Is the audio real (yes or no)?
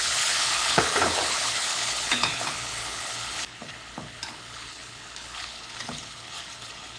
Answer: no